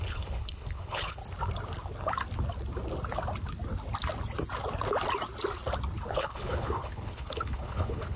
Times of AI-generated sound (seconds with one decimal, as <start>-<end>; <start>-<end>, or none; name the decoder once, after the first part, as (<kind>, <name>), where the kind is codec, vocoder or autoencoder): 0.0-1.2 (codec, HILCodec); 6.1-8.2